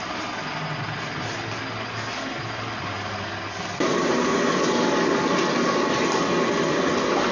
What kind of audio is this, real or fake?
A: real